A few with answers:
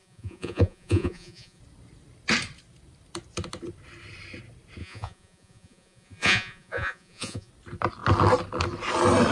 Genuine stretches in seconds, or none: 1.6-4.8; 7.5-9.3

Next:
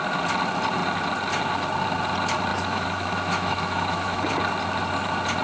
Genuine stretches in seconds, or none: 0.0-2.5; 4.3-5.4

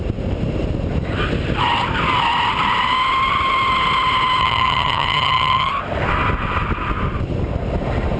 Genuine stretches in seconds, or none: 0.0-4.4; 5.7-8.2

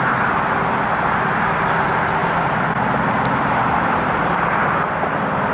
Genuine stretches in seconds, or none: 0.0-2.2